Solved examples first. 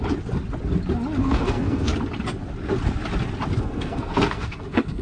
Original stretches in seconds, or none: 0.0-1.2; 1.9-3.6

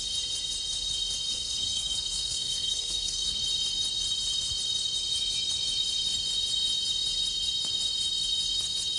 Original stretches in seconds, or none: 0.0-1.3; 3.4-9.0

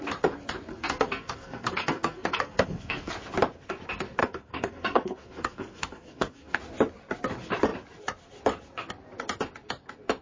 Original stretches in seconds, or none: 0.0-0.7; 3.1-4.2; 6.6-10.2

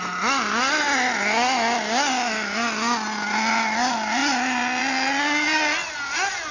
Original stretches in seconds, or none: 0.0-6.5

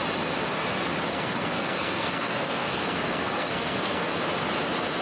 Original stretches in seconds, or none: 0.0-1.1; 4.1-5.0

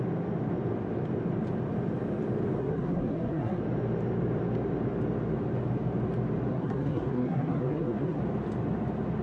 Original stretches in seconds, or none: 0.0-2.6; 3.6-6.5; 8.2-9.2